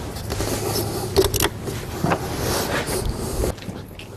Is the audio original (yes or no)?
yes